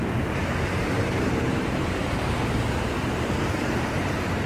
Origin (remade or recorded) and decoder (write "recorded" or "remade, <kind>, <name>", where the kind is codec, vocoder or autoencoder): remade, vocoder, BigVGAN v2